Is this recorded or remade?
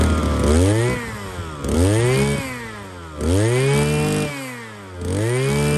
recorded